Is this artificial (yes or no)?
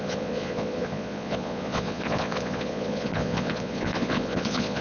yes